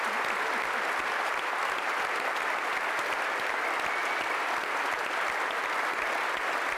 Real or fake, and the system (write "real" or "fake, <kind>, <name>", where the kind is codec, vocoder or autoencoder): real